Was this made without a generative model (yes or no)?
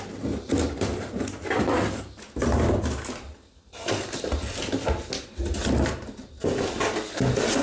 yes